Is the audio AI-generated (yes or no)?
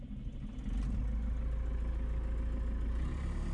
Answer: no